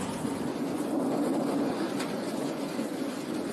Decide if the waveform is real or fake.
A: fake